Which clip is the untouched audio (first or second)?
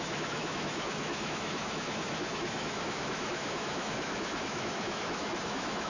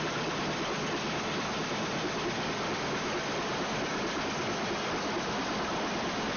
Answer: second